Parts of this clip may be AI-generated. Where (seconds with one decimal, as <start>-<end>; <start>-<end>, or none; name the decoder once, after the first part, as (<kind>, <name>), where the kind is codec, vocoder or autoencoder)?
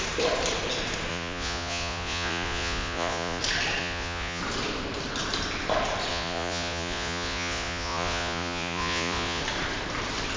1.1-3.4 (vocoder, Vocos); 3.8-4.4; 6.1-9.4